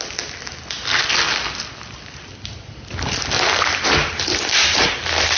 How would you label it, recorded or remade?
recorded